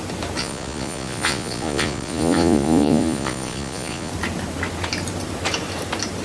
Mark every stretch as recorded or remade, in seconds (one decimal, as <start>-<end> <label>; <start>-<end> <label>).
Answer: 0.0-0.4 recorded; 0.4-4.1 remade; 4.1-6.2 recorded